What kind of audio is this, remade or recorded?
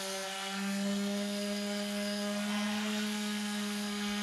remade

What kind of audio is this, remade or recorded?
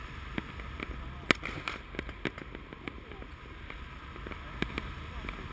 recorded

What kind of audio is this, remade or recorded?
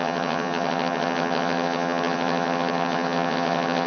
remade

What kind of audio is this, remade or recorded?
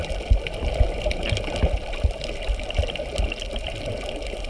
recorded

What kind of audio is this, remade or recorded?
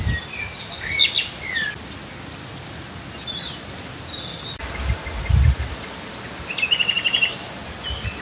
recorded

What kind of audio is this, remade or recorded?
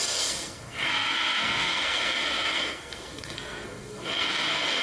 remade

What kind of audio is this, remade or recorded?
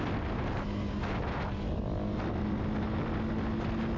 recorded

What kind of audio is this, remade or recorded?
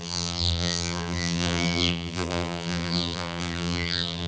remade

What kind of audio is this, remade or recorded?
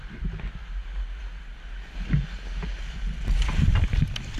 recorded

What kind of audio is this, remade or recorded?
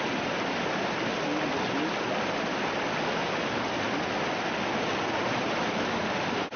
recorded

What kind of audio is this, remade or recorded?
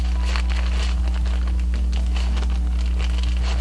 recorded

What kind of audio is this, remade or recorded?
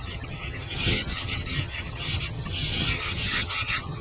remade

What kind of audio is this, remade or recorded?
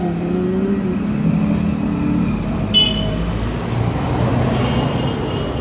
recorded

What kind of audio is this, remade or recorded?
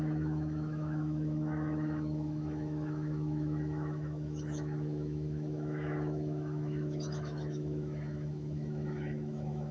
remade